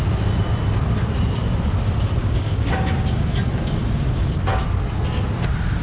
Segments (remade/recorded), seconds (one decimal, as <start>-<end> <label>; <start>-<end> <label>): 0.0-2.2 recorded; 2.2-2.7 remade; 2.7-5.8 recorded